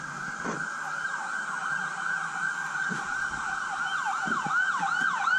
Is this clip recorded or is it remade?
recorded